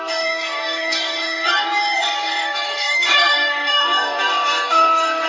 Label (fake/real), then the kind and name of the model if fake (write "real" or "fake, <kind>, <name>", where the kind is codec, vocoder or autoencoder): fake, codec, DAC